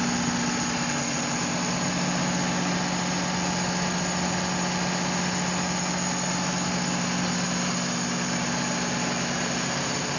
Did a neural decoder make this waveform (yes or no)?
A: no